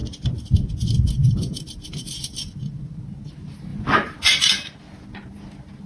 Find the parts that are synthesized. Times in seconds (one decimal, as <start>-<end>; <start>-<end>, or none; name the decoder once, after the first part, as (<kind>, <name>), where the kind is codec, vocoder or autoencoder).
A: 0.0-0.7 (vocoder, BigVGAN v2); 3.7-4.5

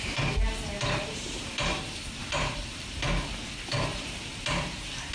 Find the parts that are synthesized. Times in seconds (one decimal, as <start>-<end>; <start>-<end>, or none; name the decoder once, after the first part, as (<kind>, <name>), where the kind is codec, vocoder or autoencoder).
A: 1.1-1.8 (vocoder, BigVGAN v2); 2.2-2.8; 3.9-5.1

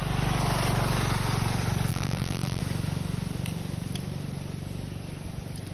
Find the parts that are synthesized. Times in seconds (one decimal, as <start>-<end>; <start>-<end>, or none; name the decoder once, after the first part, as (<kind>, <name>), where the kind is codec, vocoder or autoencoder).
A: 1.9-2.6 (vocoder, BigVGAN v2)